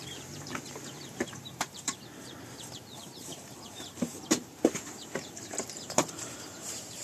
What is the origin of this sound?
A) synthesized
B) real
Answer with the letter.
A